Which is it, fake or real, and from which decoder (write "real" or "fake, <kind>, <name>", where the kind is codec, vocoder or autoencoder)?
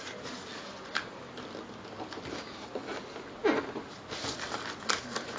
real